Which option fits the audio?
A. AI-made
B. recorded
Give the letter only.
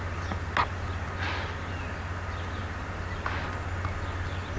B